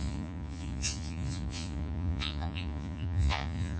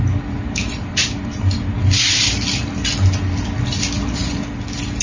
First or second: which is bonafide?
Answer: second